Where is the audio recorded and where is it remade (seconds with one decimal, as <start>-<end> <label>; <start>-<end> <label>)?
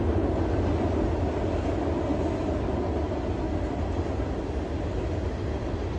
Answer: 0.0-6.0 recorded